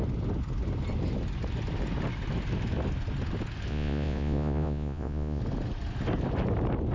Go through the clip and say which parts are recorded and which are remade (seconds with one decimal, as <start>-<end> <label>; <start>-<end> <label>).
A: 0.0-3.7 recorded; 3.7-5.4 remade; 5.4-6.9 recorded